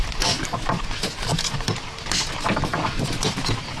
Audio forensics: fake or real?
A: real